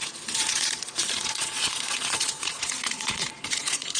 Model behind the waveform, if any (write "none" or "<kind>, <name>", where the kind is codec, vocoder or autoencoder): vocoder, Vocos